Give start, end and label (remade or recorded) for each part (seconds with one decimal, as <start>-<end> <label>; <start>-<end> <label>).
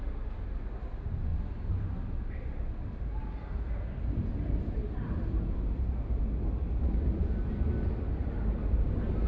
0.0-9.3 recorded